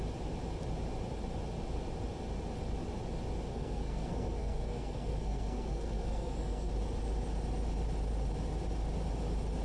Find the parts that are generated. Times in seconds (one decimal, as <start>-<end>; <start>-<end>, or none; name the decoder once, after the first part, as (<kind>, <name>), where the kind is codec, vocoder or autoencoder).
3.5-6.7 (codec, SNAC)